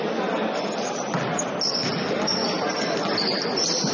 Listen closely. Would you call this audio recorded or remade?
recorded